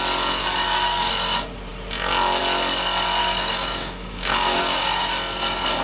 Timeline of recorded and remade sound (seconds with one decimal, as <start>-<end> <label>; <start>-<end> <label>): 0.0-0.4 recorded; 0.4-1.1 remade; 1.1-3.2 recorded; 3.2-5.1 remade; 5.1-5.8 recorded